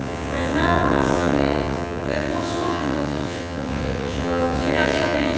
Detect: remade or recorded remade